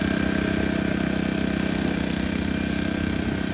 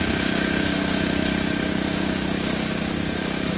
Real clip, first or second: first